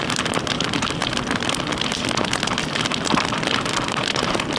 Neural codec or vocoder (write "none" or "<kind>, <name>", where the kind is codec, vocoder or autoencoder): vocoder, BigVGAN v2